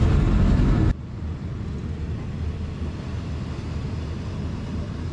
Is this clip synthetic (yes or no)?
no